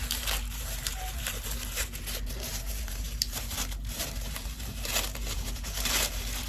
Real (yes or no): no